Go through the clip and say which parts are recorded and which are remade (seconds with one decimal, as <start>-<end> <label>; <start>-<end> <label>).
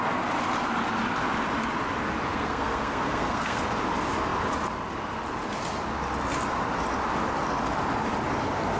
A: 0.0-2.3 recorded; 2.3-3.6 remade; 3.6-8.8 recorded